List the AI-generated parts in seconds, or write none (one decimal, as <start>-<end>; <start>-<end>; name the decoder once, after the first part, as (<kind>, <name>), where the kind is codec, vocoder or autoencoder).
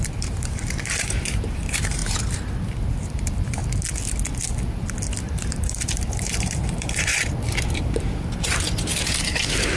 0.0-2.0 (vocoder, BigVGAN v2); 3.0-3.6; 5.2-7.1; 7.8-9.8